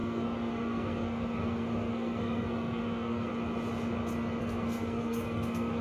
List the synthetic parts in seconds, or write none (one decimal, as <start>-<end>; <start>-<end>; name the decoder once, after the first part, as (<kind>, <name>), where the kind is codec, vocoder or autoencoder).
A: 0.0-3.3 (codec, SNAC); 4.4-5.8